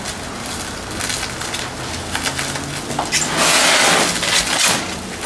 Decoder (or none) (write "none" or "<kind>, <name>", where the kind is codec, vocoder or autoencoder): none